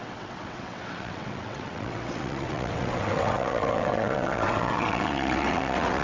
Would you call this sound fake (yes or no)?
yes